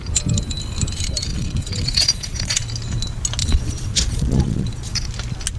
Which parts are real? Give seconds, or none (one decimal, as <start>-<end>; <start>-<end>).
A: 0.0-1.3; 2.6-3.4; 5.1-5.6